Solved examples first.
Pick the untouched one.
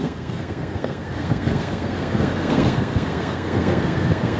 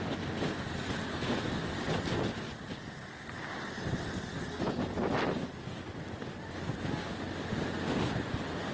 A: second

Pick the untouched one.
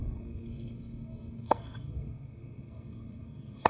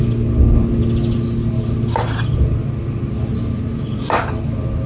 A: second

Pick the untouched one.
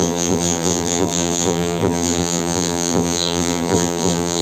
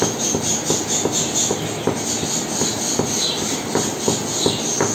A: second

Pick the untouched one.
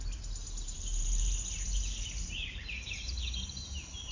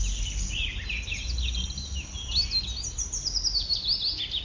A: second